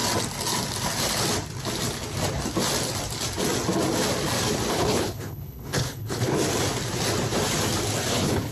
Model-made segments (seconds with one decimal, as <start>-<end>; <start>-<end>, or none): 4.7-6.3; 8.1-8.5